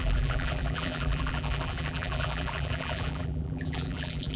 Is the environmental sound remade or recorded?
remade